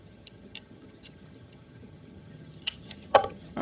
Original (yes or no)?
no